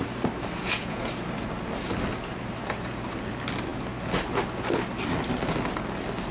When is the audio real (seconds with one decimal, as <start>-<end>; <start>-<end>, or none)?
0.0-0.6; 1.1-6.3